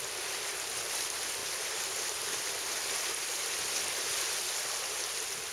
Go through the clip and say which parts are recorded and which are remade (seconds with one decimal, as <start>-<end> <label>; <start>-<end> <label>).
0.0-1.4 recorded; 1.4-3.5 remade; 3.5-5.5 recorded